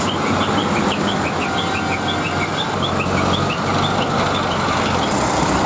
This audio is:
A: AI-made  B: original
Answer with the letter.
B